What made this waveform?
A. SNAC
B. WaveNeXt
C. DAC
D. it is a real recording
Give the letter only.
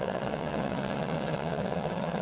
B